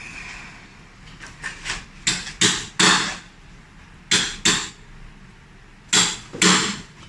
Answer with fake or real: real